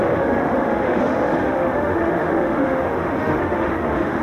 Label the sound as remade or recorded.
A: remade